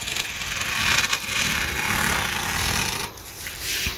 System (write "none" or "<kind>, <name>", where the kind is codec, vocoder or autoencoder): none